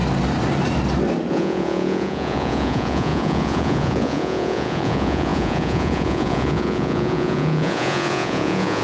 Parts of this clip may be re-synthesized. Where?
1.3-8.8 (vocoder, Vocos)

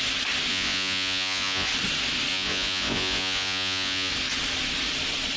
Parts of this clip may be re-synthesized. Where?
0.5-1.7 (vocoder, Vocos); 2.3-4.1